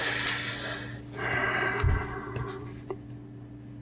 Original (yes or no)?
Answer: yes